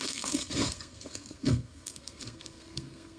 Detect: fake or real fake